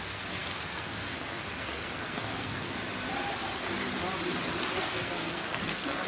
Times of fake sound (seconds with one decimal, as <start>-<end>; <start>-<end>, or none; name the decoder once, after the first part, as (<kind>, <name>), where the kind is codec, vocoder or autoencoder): 0.0-2.8 (codec, SNAC); 4.8-6.1